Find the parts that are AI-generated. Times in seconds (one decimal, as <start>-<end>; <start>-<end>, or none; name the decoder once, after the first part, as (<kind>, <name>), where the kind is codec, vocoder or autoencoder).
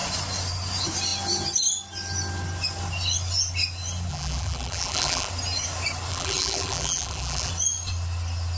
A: 4.1-5.3 (vocoder, BigVGAN v2); 6.1-7.5